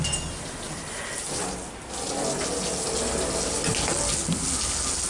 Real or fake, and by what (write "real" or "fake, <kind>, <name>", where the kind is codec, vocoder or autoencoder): real